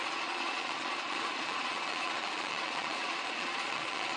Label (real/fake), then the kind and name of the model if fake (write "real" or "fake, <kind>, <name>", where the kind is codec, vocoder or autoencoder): fake, vocoder, Vocos